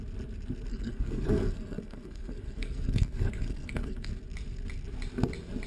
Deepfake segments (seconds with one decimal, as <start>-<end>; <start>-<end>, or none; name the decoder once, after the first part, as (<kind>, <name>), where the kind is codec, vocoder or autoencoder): 0.7-4.1 (codec, SNAC)